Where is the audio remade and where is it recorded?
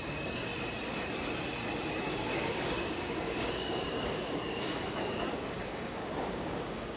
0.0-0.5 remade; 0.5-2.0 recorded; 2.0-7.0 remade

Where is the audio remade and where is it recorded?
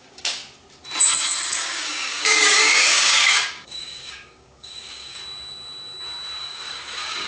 0.0-0.4 remade; 0.4-1.5 recorded; 1.5-5.2 remade; 5.2-6.4 recorded; 6.4-7.3 remade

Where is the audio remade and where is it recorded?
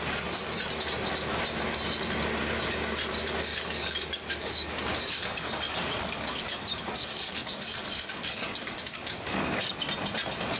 0.0-3.5 recorded; 3.5-4.7 remade; 4.7-5.2 recorded; 5.2-9.8 remade; 9.8-10.6 recorded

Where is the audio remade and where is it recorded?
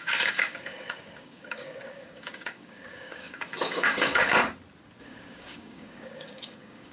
0.0-4.4 remade; 4.4-5.0 recorded; 5.0-6.9 remade